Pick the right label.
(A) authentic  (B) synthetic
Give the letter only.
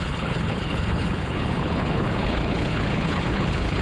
B